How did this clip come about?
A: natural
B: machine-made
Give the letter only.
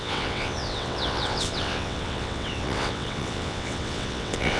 B